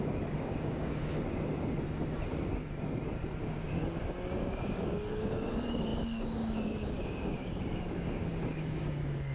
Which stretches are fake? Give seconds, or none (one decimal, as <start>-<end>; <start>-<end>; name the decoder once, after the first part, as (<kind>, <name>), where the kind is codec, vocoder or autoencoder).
0.0-1.1 (codec, DAC); 3.4-3.8; 4.4-9.3